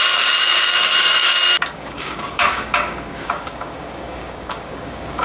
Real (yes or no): no